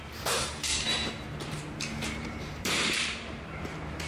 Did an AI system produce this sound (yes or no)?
yes